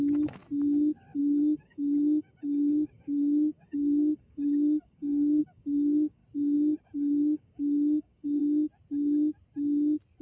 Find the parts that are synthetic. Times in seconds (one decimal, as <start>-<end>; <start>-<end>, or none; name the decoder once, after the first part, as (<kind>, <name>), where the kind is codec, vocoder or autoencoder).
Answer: 0.0-0.4 (codec, DAC); 1.2-6.2; 6.8-8.4